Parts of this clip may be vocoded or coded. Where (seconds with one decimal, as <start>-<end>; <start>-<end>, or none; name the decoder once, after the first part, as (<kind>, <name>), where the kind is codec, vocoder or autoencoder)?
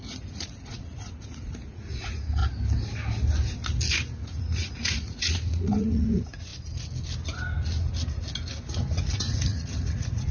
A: 0.0-2.4 (vocoder, Vocos); 3.9-6.5; 8.6-10.3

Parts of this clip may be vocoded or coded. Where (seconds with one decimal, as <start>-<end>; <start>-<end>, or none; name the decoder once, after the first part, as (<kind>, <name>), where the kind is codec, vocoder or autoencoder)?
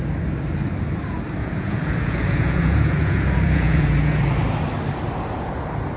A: 1.4-4.2 (vocoder, Vocos)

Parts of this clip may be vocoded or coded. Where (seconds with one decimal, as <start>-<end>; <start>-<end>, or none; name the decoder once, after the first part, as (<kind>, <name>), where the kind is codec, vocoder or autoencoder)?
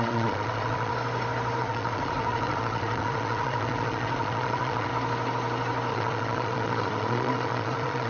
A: 0.0-0.9 (vocoder, Vocos); 1.6-4.9; 5.9-8.1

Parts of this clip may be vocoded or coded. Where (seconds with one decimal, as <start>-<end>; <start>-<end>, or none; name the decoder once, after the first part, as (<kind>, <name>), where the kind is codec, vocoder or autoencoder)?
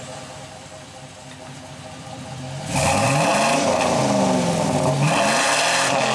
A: none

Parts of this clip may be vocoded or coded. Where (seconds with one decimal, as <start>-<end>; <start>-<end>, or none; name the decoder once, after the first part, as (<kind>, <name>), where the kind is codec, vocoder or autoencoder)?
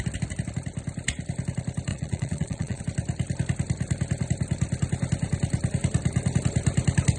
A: 1.9-2.8 (vocoder, Vocos)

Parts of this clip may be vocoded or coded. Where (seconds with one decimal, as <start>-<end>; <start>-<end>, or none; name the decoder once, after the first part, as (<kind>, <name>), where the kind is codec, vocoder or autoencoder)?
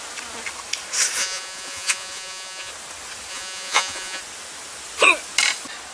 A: 1.2-2.7 (vocoder, Vocos); 3.3-4.2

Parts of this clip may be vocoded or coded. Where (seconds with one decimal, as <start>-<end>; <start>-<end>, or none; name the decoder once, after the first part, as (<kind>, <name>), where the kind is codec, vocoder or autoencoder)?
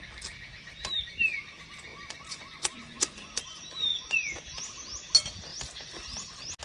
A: 1.9-3.4 (vocoder, Vocos); 3.9-4.4